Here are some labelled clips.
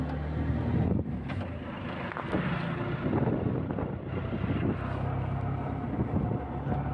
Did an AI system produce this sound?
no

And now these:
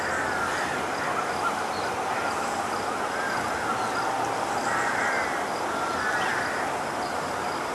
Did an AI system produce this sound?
no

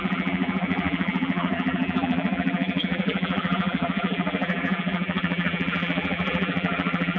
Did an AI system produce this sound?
yes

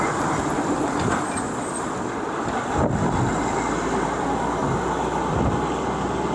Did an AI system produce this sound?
no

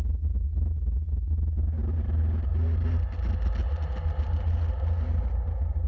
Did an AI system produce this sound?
no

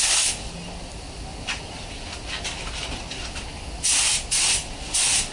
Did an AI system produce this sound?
no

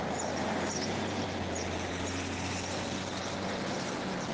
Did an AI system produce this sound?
no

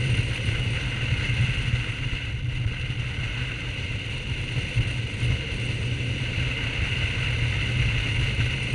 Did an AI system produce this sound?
no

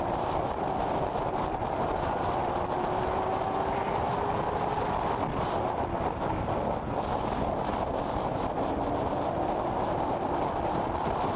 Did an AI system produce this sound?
no